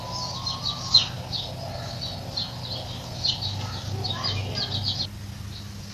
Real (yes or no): yes